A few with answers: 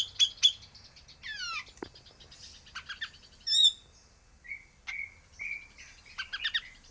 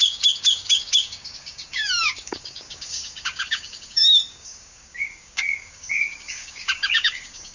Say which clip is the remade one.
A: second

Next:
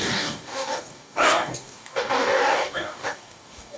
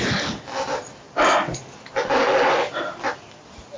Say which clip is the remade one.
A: first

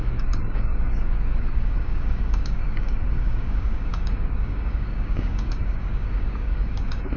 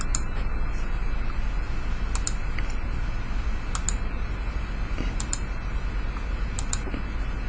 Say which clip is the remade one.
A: first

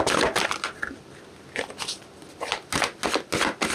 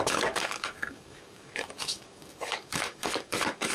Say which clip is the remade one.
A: second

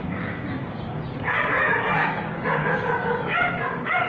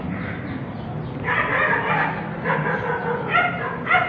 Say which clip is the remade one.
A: first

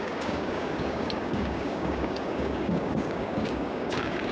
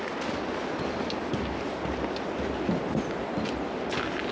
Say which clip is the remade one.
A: first